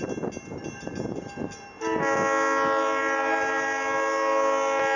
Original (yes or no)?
yes